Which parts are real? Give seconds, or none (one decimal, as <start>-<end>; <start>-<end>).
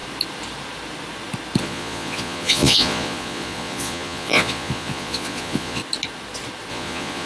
0.0-1.6; 5.8-6.7